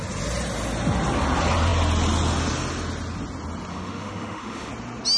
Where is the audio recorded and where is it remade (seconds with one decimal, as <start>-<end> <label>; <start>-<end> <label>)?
0.0-3.7 recorded; 3.7-4.7 remade; 4.7-5.2 recorded